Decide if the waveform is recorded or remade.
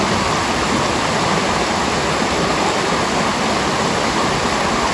recorded